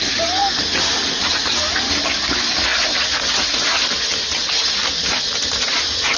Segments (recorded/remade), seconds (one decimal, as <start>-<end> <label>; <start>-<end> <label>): 0.0-6.2 recorded